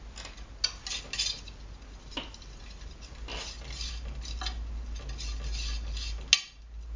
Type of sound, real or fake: real